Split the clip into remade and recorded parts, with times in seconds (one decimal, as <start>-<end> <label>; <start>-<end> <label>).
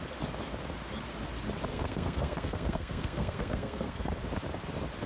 0.0-1.7 recorded; 1.7-4.1 remade; 4.1-5.1 recorded